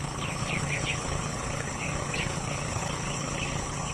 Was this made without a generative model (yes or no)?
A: no